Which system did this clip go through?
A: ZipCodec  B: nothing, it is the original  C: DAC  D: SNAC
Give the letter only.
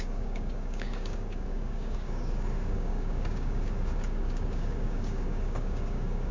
C